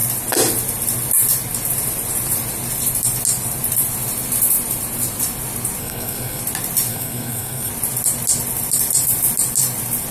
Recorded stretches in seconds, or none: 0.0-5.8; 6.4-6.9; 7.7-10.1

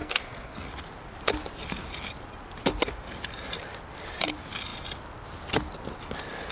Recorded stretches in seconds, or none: 0.7-6.5